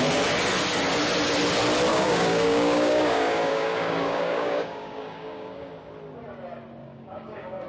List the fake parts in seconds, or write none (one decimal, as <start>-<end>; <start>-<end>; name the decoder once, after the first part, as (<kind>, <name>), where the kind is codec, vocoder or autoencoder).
1.9-5.7 (codec, DAC); 6.8-7.7